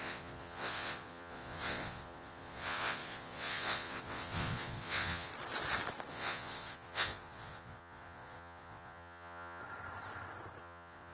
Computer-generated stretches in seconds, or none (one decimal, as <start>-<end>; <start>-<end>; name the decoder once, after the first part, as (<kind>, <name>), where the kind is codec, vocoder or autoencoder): 0.0-5.3 (vocoder, Vocos); 6.1-9.6; 10.6-11.1